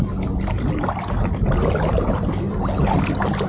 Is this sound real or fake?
real